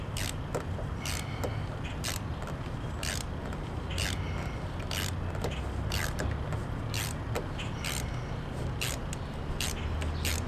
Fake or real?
real